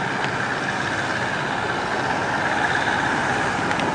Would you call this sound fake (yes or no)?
no